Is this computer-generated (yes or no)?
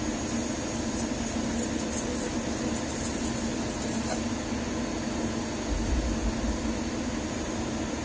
no